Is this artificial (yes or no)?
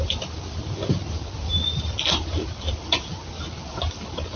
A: no